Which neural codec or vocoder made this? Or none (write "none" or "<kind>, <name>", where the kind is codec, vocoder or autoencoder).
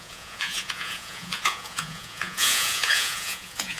vocoder, Vocos